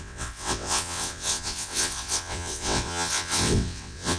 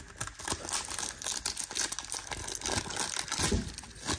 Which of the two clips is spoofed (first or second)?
first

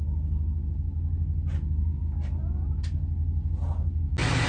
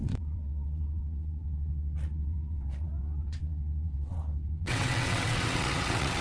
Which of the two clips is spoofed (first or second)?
second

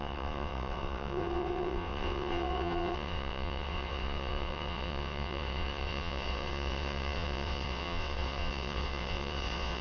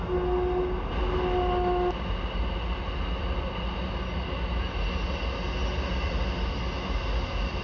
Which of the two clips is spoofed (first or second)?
first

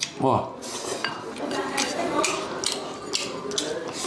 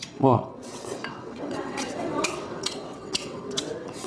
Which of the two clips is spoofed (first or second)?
second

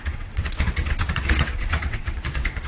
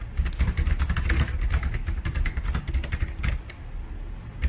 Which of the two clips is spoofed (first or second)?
first